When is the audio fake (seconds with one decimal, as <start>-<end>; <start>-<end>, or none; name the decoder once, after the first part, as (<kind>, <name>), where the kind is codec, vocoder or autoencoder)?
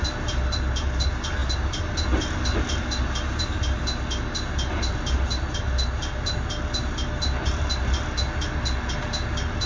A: none